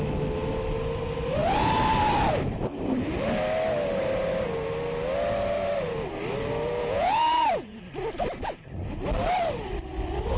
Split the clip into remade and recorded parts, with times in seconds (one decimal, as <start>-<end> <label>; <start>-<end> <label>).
0.0-6.8 recorded; 6.8-7.8 remade; 7.8-10.4 recorded